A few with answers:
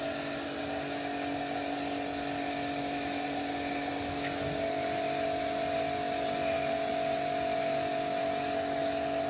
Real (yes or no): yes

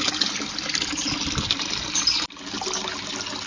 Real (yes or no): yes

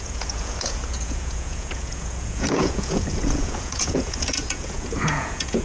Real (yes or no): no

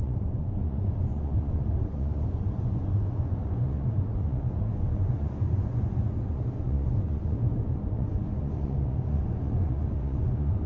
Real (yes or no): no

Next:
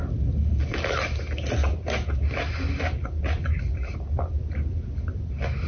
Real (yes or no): yes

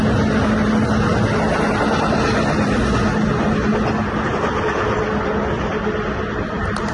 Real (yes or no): yes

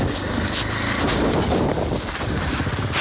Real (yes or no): yes